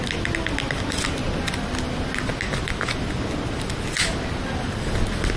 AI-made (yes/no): no